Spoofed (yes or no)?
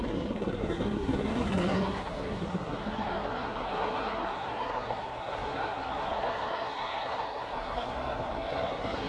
yes